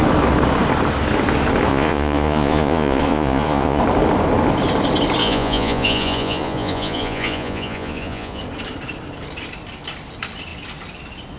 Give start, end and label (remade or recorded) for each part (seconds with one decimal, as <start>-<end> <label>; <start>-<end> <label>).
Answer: 0.0-1.7 recorded; 1.7-3.8 remade; 3.8-5.2 recorded; 5.2-8.4 remade; 8.4-11.4 recorded